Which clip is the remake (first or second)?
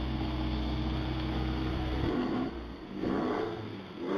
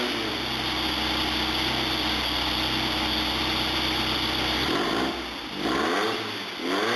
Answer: first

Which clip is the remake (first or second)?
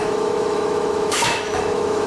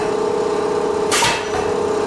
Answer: first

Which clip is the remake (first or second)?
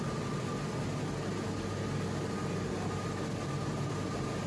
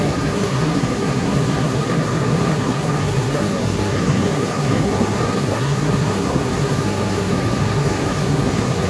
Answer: second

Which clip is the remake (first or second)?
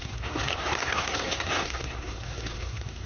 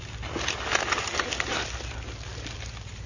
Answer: first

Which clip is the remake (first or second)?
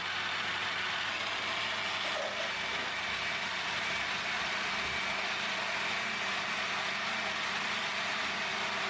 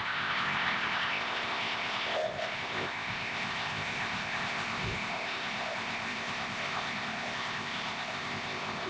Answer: second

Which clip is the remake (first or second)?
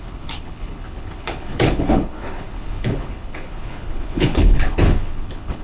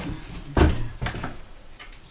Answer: first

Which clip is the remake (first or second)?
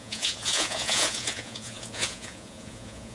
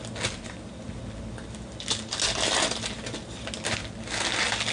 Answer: first